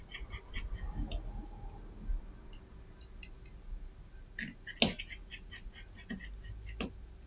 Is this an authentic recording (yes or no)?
yes